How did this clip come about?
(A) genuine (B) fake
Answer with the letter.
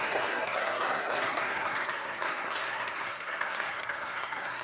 B